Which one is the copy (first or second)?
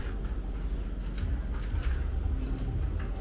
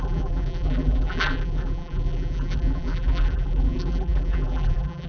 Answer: second